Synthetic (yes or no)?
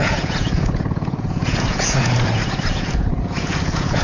yes